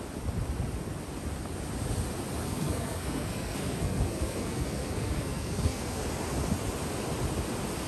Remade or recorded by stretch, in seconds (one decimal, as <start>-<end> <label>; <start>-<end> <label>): 0.0-2.4 recorded; 2.4-6.0 remade; 6.0-7.9 recorded